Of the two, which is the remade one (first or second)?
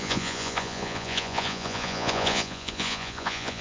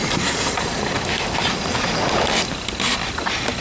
first